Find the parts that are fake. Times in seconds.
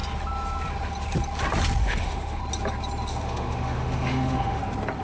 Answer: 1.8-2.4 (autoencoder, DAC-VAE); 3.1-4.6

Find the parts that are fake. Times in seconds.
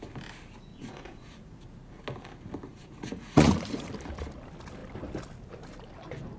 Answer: 0.7-1.6 (vocoder, Vocos); 2.7-3.9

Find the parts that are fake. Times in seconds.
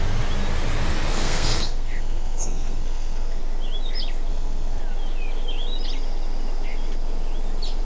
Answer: 1.1-3.4 (codec, SNAC); 4.3-4.8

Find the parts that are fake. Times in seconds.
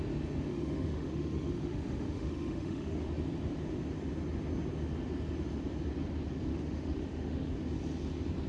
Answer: 0.5-3.1 (autoencoder, DAC-VAE); 6.5-7.5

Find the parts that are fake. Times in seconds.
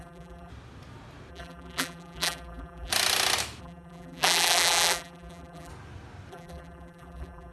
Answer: 0.0-0.5 (vocoder, BigVGAN v2); 1.3-2.9; 3.6-5.7; 6.3-7.5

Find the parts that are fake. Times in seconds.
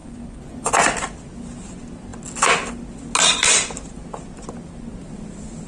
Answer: 0.0-0.7 (vocoder, Vocos)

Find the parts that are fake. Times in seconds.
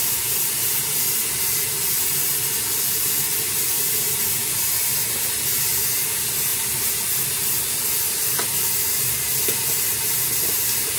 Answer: none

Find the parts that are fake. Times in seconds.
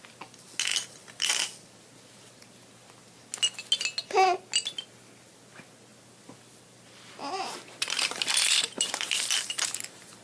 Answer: 0.7-1.3 (vocoder, BigVGAN v2); 5.9-10.2